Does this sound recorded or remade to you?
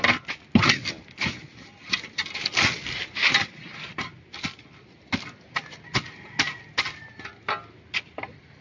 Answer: recorded